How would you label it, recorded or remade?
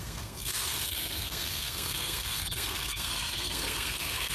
remade